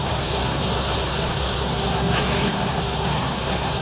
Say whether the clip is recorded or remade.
remade